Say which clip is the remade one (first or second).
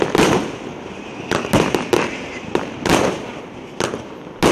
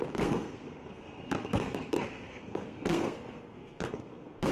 second